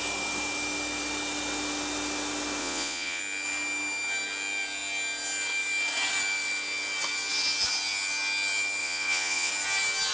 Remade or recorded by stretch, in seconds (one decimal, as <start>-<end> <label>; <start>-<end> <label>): 0.0-2.6 recorded; 2.6-3.2 remade; 3.2-8.8 recorded; 8.8-9.5 remade; 9.5-10.1 recorded